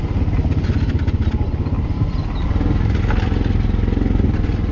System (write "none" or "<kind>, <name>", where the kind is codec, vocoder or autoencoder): none